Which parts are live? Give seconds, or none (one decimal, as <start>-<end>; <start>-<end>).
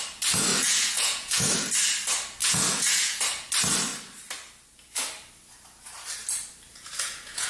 0.0-0.5; 1.4-2.4; 3.2-6.7